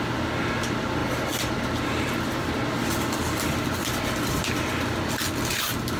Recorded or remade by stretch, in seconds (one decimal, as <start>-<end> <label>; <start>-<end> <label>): 0.0-6.0 recorded